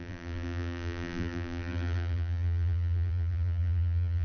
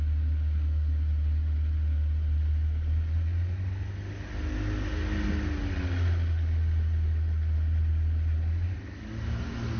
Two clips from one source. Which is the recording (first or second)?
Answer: second